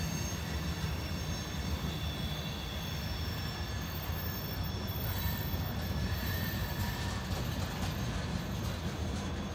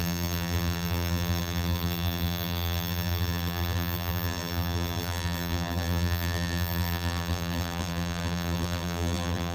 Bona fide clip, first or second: first